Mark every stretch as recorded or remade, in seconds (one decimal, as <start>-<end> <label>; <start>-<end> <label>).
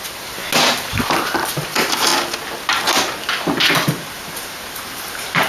0.0-0.4 remade; 0.4-0.9 recorded; 0.9-2.1 remade; 2.1-4.1 recorded; 4.1-5.5 remade